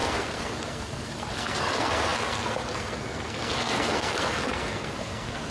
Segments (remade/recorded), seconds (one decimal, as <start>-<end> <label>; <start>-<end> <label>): 0.0-5.5 remade